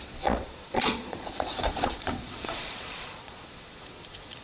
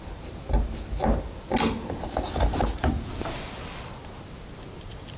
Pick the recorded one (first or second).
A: second